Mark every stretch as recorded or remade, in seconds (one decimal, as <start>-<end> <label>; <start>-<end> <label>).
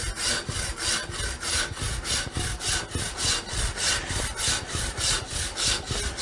0.0-6.2 recorded